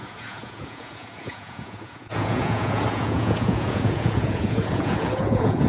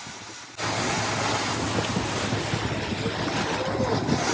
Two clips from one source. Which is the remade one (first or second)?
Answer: first